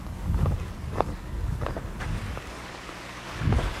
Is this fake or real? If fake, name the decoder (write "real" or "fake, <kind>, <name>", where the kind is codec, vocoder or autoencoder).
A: fake, codec, DAC